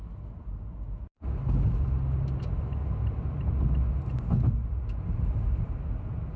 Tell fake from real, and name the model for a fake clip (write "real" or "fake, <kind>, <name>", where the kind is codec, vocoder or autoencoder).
real